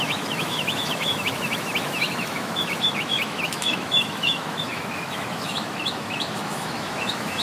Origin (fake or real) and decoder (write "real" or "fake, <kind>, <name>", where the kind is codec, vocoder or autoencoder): fake, autoencoder, DAC-VAE